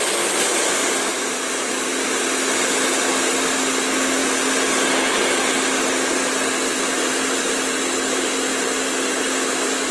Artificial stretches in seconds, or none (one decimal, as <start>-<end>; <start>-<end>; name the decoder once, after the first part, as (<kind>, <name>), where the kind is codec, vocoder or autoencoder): 1.1-1.9 (vocoder, BigVGAN v2)